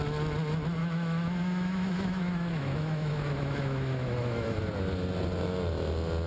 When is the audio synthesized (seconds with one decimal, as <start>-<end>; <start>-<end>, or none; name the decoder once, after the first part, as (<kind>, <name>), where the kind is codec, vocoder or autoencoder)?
0.8-4.6 (autoencoder, DAC-VAE)